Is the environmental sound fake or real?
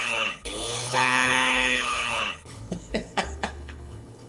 fake